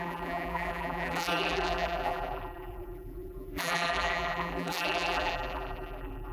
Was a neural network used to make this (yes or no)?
yes